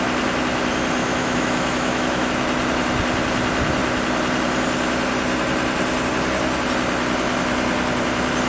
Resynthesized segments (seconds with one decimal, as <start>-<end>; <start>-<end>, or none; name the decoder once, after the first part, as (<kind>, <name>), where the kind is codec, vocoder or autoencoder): 1.0-2.3 (autoencoder, DAC-VAE)